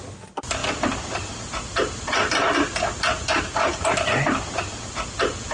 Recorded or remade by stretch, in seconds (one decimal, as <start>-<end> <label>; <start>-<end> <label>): 0.0-5.5 recorded